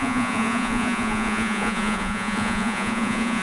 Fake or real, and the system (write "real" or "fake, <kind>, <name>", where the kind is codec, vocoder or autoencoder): fake, vocoder, Vocos